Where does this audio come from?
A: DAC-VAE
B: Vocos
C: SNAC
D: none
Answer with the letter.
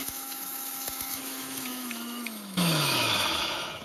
A